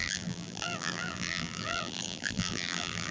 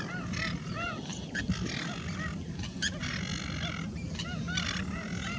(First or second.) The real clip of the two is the second